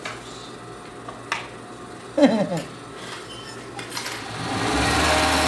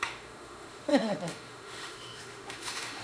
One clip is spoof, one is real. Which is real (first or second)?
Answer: first